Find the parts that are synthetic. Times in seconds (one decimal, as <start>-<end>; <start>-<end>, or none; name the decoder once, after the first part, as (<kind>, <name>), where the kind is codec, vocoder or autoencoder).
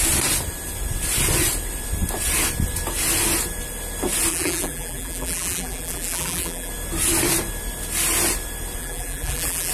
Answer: 4.3-6.7 (vocoder, BigVGAN v2); 8.8-9.7